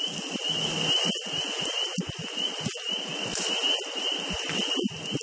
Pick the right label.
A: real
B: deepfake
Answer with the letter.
A